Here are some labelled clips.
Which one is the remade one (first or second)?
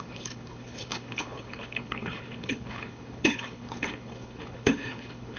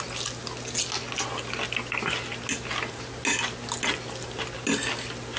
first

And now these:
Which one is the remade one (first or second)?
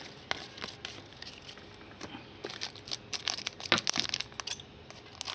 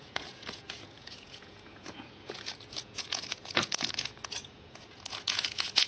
second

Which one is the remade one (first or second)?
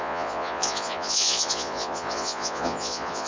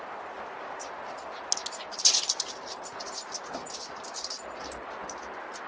first